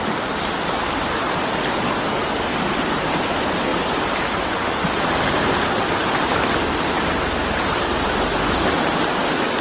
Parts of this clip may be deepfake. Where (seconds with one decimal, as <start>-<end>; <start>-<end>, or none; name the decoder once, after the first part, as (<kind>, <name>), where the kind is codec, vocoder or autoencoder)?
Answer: none